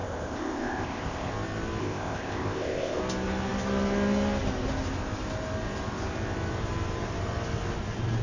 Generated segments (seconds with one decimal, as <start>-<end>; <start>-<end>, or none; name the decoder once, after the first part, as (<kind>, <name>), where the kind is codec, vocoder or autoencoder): 0.0-1.3 (codec, ZipCodec); 1.8-3.0